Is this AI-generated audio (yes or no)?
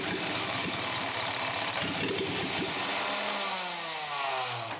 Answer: no